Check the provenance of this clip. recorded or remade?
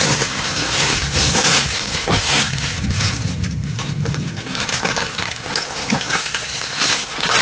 remade